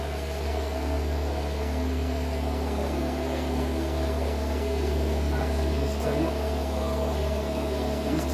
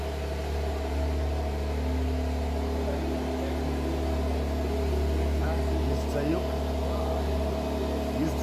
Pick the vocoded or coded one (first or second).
first